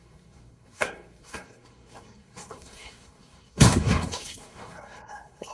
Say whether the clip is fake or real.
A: fake